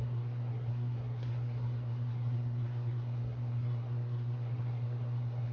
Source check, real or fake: fake